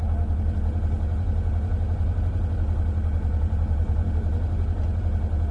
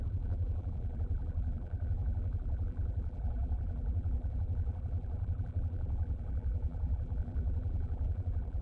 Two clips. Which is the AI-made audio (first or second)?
second